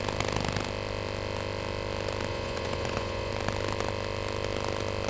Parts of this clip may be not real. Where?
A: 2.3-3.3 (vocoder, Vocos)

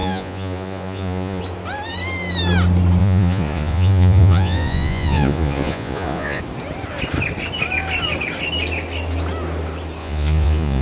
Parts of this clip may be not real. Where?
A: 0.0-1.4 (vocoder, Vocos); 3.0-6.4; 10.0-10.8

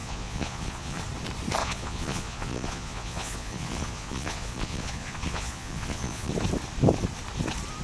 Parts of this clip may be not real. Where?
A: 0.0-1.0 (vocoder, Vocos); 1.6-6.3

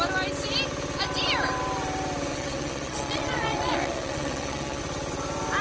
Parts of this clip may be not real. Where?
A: 2.3-4.8 (vocoder, Vocos)

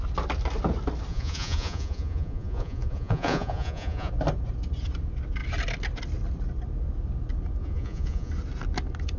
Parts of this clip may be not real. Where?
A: 1.1-4.1 (vocoder, Vocos); 7.6-8.3

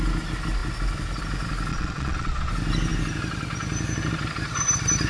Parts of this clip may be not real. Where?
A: 1.7-2.5 (vocoder, Vocos)

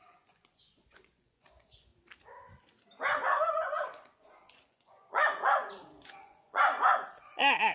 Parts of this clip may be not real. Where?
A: 0.0-1.9 (vocoder, Vocos); 3.5-7.7